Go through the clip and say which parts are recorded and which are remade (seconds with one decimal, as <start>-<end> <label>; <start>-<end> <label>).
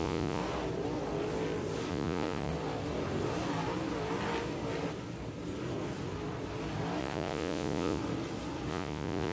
0.0-0.4 remade; 0.4-1.9 recorded; 1.9-2.5 remade; 2.5-7.0 recorded; 7.0-8.0 remade; 8.0-8.7 recorded; 8.7-9.3 remade